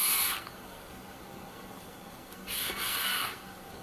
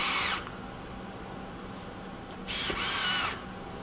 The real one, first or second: second